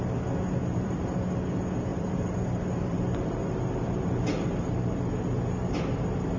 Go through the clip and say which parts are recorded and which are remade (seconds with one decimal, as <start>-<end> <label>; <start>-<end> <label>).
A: 0.0-0.6 recorded; 0.6-1.3 remade; 1.3-1.9 recorded; 1.9-5.1 remade; 5.1-6.4 recorded